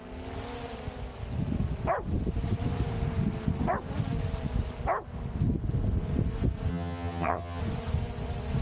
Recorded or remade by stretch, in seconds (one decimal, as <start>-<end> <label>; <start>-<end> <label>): 0.0-6.7 recorded; 6.7-7.6 remade; 7.6-8.6 recorded